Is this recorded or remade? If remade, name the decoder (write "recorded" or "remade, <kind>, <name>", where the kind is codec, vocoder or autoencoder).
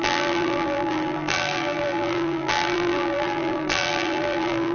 remade, vocoder, BigVGAN v2